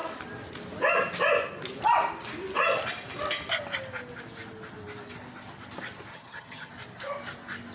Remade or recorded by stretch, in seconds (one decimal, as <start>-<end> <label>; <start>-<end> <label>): 0.0-6.1 recorded; 6.1-6.7 remade; 6.7-7.7 recorded